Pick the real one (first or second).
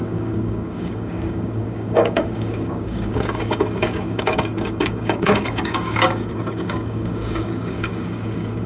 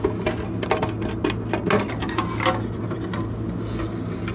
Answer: second